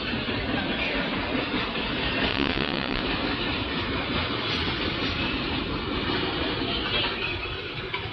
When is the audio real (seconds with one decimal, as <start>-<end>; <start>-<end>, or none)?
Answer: 0.0-2.3; 3.0-8.1

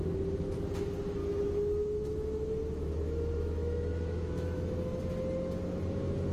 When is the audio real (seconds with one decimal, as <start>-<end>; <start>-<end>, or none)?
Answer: 0.0-1.2; 5.0-6.3

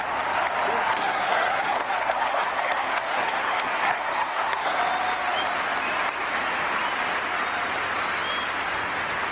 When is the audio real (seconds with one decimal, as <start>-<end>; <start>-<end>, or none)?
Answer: 0.0-0.8; 4.8-9.3

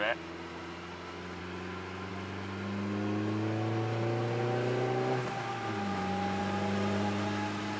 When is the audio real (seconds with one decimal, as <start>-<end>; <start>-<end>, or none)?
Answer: 0.0-7.8

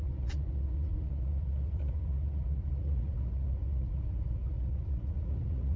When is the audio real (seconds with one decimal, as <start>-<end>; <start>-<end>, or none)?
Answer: none

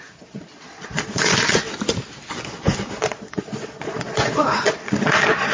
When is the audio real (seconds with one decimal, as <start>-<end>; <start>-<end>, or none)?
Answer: 1.7-3.0

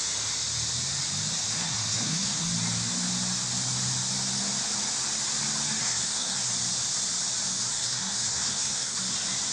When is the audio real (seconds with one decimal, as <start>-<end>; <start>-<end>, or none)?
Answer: 0.0-1.5; 2.5-5.8; 6.5-7.6; 9.0-9.5